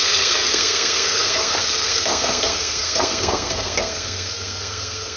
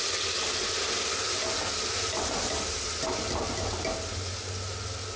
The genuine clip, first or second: second